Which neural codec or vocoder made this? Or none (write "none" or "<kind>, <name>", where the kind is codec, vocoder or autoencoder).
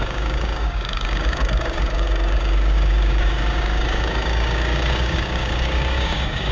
codec, DAC